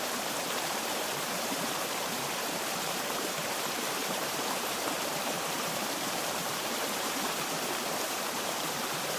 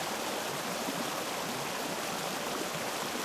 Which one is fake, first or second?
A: first